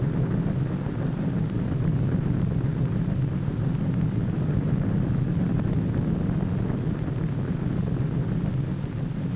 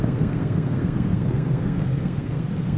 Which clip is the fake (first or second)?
second